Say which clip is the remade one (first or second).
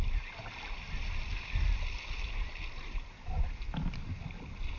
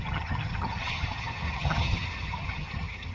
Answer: second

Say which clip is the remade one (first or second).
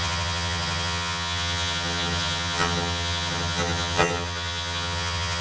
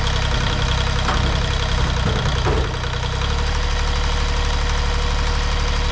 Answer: first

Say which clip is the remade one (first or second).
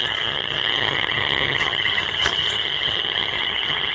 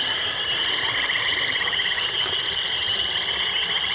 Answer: first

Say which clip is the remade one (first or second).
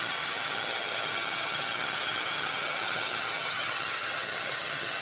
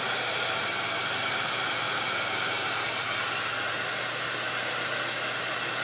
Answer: first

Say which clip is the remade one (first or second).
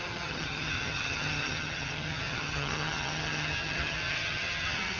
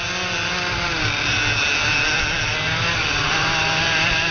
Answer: first